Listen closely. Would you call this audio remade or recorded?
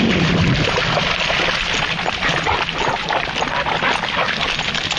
recorded